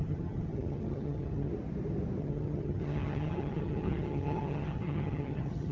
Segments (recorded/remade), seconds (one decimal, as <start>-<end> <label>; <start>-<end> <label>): 0.0-1.5 remade; 1.5-2.2 recorded; 2.2-5.7 remade